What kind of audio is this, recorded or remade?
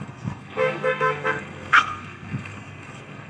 remade